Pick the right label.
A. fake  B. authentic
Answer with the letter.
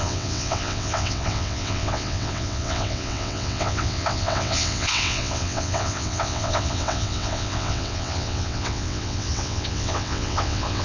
A